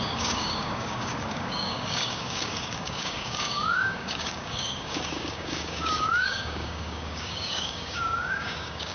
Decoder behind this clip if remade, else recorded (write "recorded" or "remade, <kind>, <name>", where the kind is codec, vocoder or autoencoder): remade, codec, DAC